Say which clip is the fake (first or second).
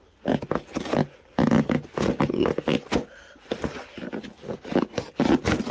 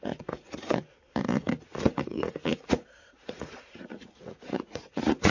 second